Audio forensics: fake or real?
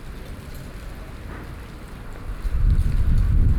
real